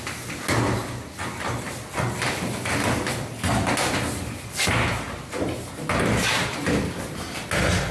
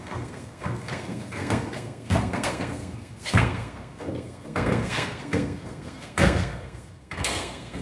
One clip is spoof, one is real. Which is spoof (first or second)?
second